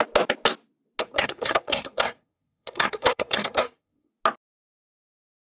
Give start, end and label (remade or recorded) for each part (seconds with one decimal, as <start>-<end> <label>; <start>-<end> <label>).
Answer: 0.0-1.0 recorded; 1.0-4.1 remade; 4.1-5.6 recorded